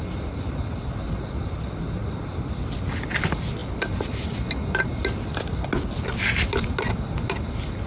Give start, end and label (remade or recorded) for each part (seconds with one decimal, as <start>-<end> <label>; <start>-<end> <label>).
0.0-7.9 recorded